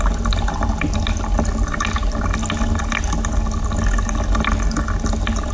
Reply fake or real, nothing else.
real